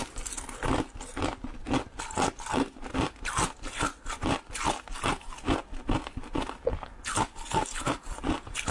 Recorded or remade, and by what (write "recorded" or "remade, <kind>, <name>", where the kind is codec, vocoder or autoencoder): recorded